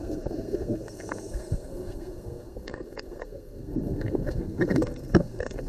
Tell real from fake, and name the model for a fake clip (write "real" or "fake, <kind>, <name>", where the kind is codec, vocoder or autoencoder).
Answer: fake, codec, SNAC